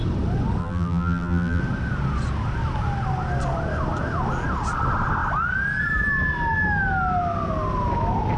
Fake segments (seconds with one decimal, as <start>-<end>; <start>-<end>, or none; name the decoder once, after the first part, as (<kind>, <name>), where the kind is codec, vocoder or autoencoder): 0.6-1.6 (vocoder, BigVGAN v2)